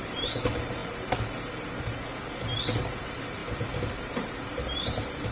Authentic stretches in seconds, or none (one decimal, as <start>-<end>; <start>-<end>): 0.8-3.0; 3.4-3.9